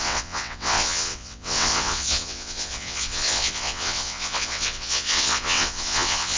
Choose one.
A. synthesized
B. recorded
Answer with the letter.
A